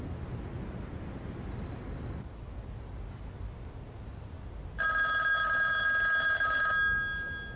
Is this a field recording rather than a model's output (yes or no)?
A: yes